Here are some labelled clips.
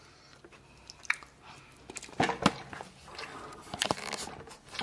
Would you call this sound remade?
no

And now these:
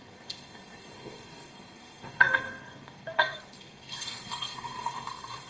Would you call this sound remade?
yes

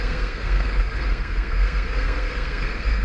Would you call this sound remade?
yes